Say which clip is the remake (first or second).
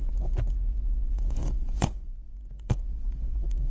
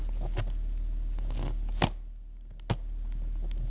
first